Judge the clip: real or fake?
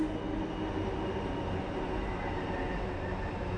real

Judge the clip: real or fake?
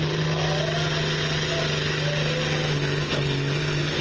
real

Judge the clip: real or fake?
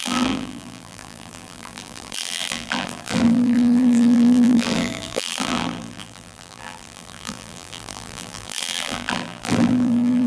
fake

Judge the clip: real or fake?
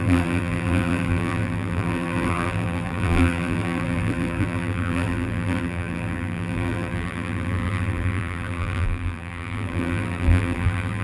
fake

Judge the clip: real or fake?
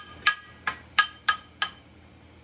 real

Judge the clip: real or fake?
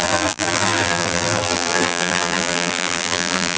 fake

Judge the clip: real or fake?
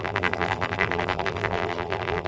fake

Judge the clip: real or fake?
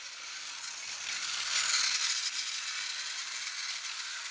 real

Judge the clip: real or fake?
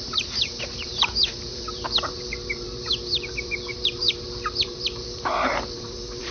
fake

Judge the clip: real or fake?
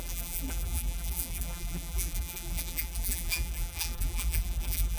fake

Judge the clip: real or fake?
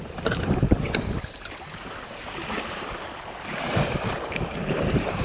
fake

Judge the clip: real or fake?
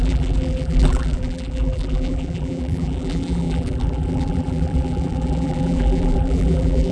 fake